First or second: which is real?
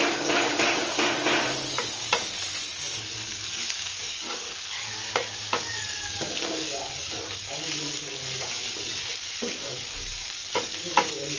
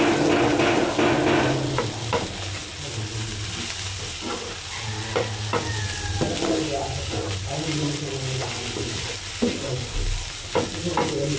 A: second